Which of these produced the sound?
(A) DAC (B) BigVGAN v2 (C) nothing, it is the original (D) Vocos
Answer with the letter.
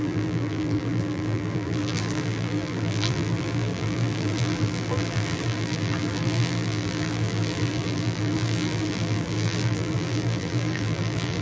B